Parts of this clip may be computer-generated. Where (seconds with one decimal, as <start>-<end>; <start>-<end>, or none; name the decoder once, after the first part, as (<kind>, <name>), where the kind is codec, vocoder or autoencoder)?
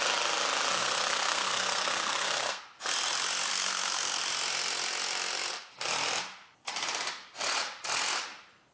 0.8-2.6 (codec, SNAC); 3.5-4.2